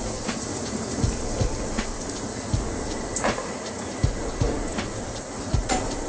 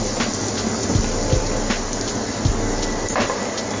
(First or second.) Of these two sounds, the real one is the second